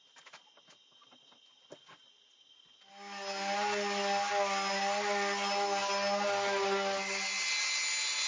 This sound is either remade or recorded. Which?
recorded